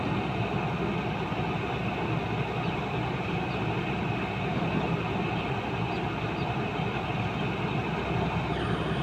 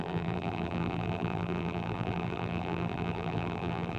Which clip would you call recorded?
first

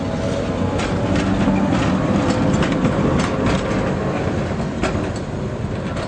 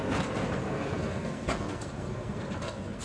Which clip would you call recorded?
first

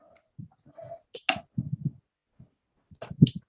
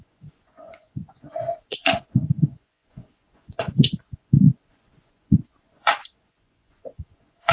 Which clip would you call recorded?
first